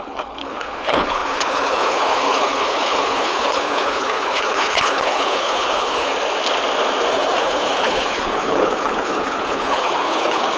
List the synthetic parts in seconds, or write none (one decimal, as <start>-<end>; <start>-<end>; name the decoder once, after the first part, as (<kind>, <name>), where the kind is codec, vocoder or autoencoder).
0.0-6.1 (codec, HILCodec); 7.1-10.6